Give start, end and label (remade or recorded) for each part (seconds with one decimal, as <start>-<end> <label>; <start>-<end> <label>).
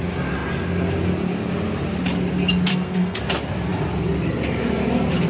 0.0-2.7 recorded; 2.7-3.2 remade; 3.2-5.3 recorded